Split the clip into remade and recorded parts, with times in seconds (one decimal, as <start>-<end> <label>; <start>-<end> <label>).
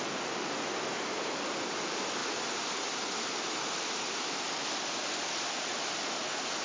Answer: 0.0-6.6 recorded